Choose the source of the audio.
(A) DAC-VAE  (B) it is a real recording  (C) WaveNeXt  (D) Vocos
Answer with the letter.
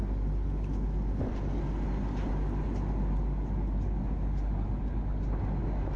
B